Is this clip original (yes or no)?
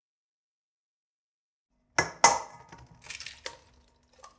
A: yes